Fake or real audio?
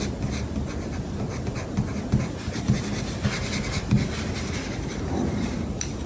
real